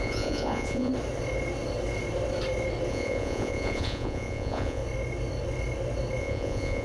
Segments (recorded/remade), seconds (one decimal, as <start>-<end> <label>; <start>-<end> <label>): 0.0-0.9 remade; 0.9-2.9 recorded; 2.9-4.8 remade; 4.8-6.2 recorded; 6.2-6.8 remade